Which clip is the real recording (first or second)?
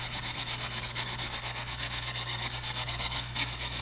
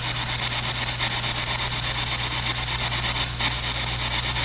second